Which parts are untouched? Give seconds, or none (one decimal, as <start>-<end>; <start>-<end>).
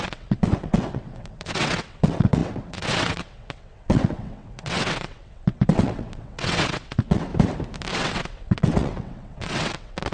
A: 7.3-7.9